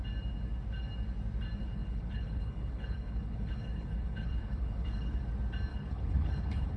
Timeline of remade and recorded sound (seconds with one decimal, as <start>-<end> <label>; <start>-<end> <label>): 0.0-1.6 recorded; 1.6-5.2 remade; 5.2-5.7 recorded; 5.7-6.8 remade